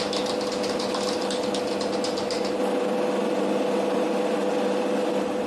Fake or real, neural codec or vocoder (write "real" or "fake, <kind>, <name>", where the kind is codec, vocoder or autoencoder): real